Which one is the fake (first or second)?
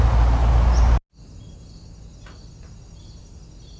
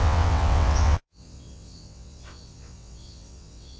second